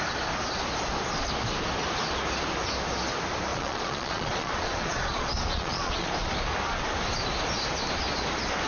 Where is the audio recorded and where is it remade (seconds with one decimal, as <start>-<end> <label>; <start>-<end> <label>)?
0.0-3.5 recorded; 3.5-6.1 remade; 6.1-8.7 recorded